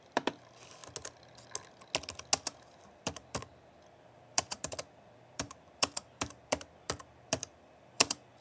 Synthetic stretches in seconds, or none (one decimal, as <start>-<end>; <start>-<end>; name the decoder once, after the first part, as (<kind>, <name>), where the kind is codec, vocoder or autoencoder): 0.0-0.8 (vocoder, BigVGAN v2); 2.8-8.4